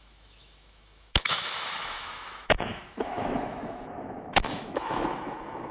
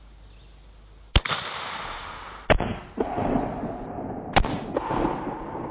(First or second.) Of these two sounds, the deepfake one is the first